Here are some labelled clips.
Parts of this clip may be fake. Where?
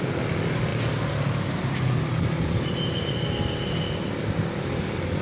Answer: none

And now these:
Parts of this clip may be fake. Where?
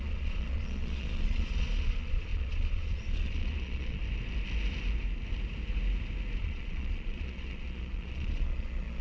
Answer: 0.0-4.0; 6.4-9.0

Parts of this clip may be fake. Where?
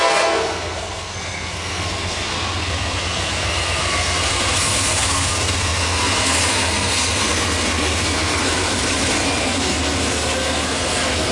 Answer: 0.0-8.7; 9.4-11.3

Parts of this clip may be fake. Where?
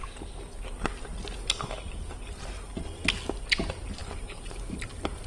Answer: none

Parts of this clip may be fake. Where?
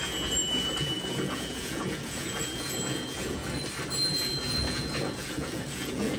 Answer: 0.0-3.4; 4.1-6.2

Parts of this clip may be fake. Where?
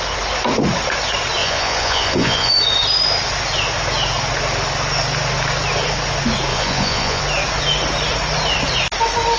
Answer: 1.4-2.5; 6.5-7.2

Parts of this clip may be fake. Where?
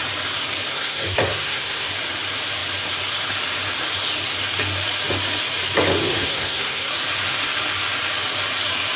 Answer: 0.7-1.9; 6.1-6.9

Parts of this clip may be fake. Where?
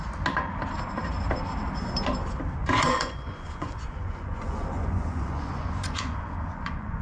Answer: 2.6-7.0